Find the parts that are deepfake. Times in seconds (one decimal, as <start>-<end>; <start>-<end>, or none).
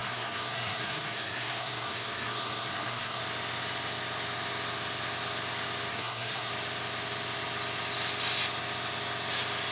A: 0.0-3.2; 5.9-6.5